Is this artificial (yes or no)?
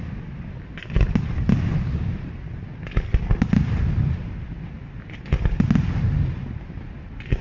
no